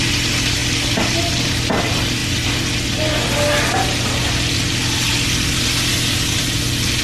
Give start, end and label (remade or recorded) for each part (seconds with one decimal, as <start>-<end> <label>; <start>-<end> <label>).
0.0-7.0 recorded

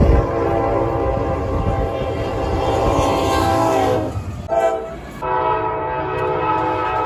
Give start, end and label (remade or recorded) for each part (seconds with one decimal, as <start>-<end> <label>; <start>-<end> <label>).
0.0-3.4 recorded; 3.4-4.1 remade; 4.1-7.1 recorded

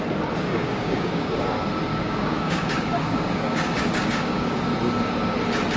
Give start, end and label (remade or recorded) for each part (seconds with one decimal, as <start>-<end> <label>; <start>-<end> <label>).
0.0-0.5 recorded; 0.5-1.4 remade; 1.4-1.9 recorded; 1.9-4.7 remade; 4.7-5.8 recorded

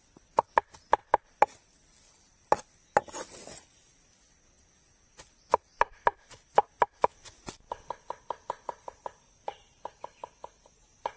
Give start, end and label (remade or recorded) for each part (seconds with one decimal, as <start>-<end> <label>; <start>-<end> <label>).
0.0-11.2 recorded